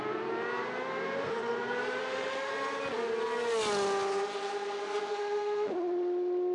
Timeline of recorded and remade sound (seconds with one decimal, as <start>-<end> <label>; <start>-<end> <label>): 0.0-2.0 recorded; 2.0-2.5 remade; 2.5-5.1 recorded; 5.1-5.7 remade; 5.7-6.5 recorded